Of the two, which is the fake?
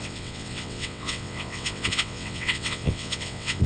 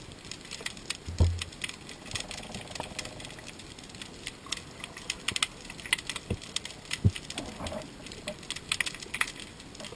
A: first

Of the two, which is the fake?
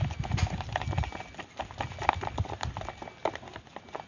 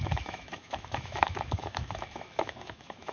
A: second